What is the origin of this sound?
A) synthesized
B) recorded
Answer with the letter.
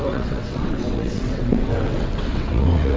A